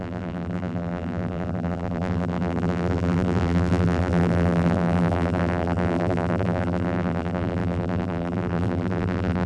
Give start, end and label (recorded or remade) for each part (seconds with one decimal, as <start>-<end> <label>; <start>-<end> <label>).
0.0-9.5 remade